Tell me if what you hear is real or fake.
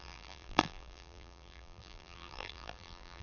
fake